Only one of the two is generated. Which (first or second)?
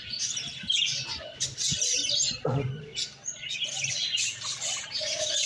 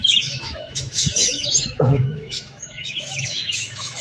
second